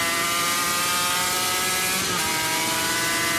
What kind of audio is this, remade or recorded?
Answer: recorded